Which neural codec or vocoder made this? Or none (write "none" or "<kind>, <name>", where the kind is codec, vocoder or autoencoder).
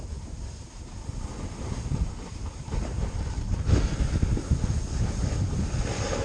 none